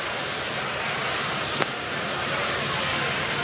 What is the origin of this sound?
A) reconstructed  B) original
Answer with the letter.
B